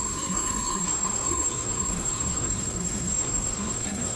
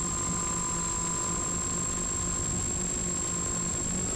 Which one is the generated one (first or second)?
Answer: first